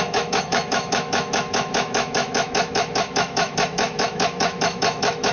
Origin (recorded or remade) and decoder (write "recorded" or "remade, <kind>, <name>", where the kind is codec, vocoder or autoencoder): remade, autoencoder, DAC-VAE